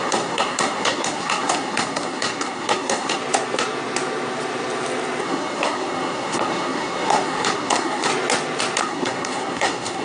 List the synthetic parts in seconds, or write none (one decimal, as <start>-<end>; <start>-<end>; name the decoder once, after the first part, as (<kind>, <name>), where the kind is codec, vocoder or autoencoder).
0.0-3.2 (codec, SNAC); 5.2-8.1; 8.8-10.0